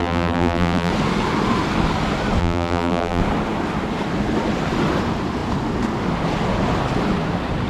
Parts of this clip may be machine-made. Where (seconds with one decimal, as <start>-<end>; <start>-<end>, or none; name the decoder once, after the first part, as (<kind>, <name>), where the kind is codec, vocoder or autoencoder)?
0.0-0.9 (vocoder, BigVGAN v2); 2.4-3.2